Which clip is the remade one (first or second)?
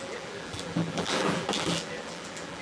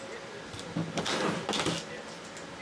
first